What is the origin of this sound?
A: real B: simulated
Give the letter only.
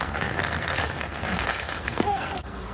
B